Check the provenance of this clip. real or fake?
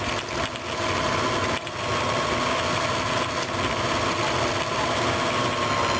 real